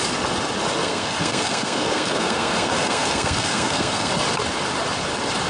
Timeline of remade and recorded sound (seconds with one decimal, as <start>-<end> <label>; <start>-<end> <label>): 0.0-0.8 recorded; 0.8-4.1 remade; 4.1-5.5 recorded

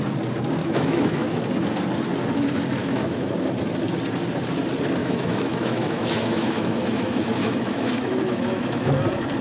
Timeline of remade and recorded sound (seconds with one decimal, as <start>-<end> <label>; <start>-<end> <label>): 0.0-0.6 recorded; 0.6-1.4 remade; 1.4-2.8 recorded; 2.8-3.3 remade; 3.3-5.0 recorded; 5.0-8.9 remade; 8.9-9.4 recorded

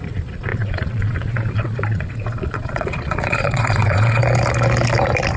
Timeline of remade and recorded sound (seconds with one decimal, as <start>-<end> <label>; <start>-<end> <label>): 0.0-4.2 remade; 4.2-5.4 recorded

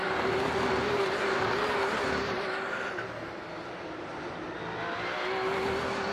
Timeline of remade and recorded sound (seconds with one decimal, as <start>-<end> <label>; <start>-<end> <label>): 0.0-6.1 recorded

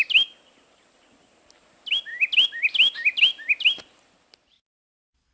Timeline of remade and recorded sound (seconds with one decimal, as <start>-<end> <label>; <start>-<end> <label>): 0.0-5.3 recorded

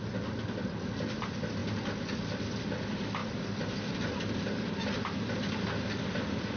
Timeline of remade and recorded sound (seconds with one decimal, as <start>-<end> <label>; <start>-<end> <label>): 0.0-6.6 recorded

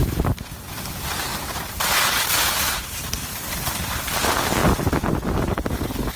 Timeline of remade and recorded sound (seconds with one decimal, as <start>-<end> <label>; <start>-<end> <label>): 0.0-4.6 remade; 4.6-6.2 recorded

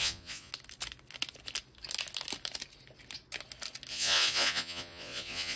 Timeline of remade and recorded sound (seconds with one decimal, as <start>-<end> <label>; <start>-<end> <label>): 0.0-0.5 remade; 0.5-3.9 recorded; 3.9-5.6 remade